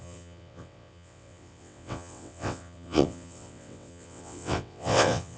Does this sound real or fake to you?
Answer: fake